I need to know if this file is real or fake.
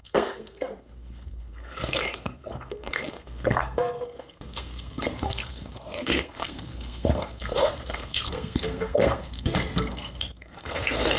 fake